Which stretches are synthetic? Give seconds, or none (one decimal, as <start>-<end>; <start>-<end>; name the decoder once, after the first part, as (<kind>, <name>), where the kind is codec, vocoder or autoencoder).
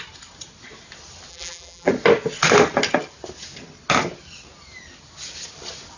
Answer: 1.3-1.9 (vocoder, BigVGAN v2)